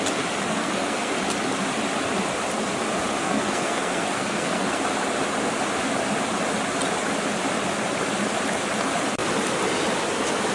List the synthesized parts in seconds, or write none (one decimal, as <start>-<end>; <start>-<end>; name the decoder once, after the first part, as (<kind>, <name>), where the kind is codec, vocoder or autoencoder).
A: 0.5-1.1 (codec, SNAC); 3.2-4.8